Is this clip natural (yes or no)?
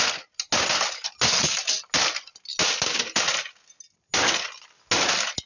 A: yes